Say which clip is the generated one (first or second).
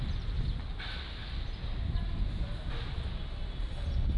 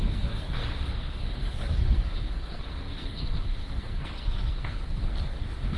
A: second